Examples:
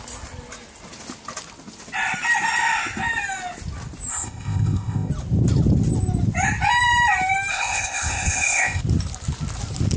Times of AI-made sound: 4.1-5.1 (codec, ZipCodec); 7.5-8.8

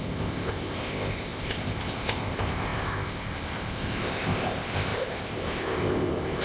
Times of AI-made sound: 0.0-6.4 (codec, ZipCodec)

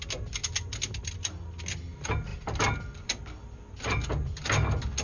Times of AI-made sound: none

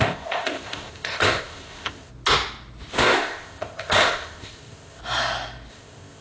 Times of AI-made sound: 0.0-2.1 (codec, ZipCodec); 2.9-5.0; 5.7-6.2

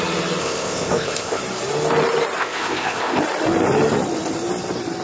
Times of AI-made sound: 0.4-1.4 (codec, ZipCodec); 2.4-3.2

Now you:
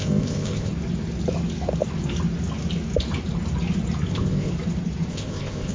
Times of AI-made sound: 0.0-0.7 (codec, ZipCodec); 4.1-4.5; 5.1-5.7

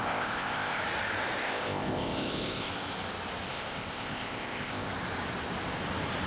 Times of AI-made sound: 0.0-0.8 (codec, ZipCodec); 1.4-2.7; 3.5-4.9